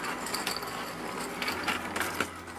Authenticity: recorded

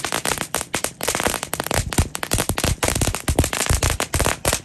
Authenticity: recorded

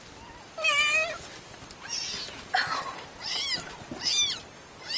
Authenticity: recorded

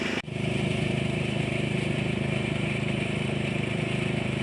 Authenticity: remade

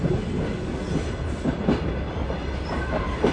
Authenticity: recorded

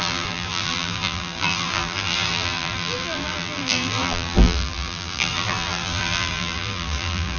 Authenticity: remade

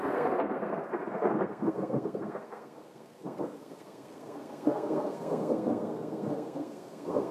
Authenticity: remade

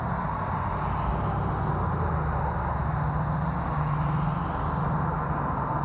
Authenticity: recorded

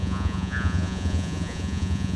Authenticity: remade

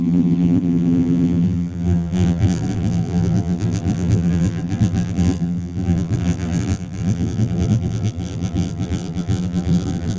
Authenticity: remade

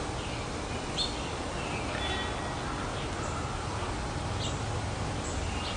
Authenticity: recorded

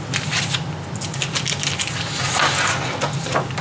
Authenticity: recorded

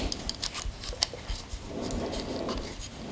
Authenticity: recorded